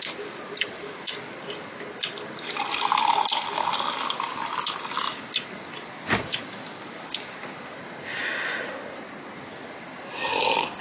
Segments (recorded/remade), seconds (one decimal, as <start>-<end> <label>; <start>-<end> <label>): 0.0-10.8 recorded